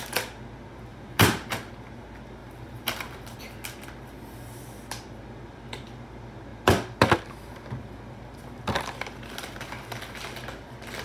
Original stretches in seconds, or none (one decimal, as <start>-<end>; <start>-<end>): 0.0-0.9; 1.7-2.4; 3.4-11.0